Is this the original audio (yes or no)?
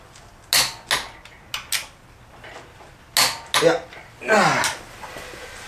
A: yes